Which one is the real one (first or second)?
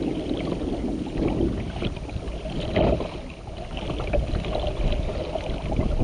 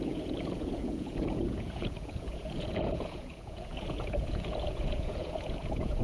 first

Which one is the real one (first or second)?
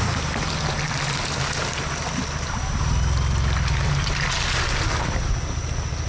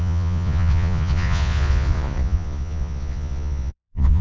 first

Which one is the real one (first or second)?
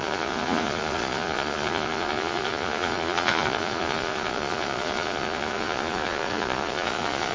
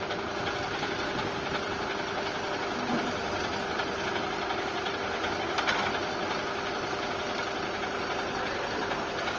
second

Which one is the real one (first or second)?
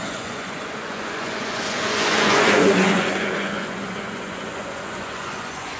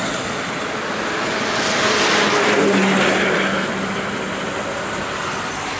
second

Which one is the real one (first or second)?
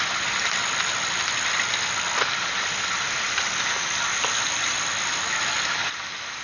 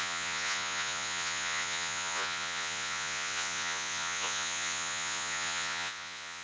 first